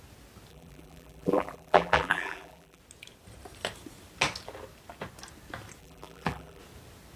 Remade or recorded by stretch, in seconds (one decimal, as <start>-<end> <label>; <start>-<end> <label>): 0.0-0.5 recorded; 0.5-2.8 remade; 2.8-5.8 recorded; 5.8-6.6 remade; 6.6-7.2 recorded